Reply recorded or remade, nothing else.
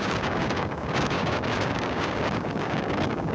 remade